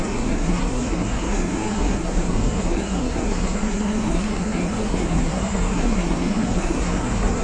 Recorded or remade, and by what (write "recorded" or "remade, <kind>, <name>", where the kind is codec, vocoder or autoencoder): remade, codec, SNAC